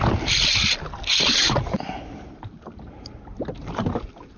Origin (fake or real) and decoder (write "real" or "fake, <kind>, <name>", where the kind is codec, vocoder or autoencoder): real